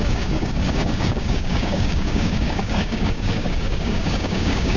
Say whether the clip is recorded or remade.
remade